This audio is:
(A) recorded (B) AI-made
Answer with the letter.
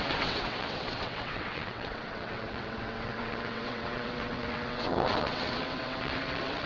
B